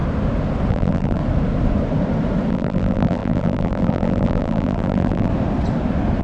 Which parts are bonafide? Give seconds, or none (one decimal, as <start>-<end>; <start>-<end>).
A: 0.0-0.7; 1.2-2.5; 5.3-6.2